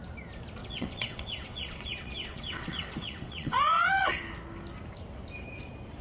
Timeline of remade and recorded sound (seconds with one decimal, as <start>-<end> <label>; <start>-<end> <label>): 0.0-0.6 recorded; 0.6-4.2 remade; 4.2-6.0 recorded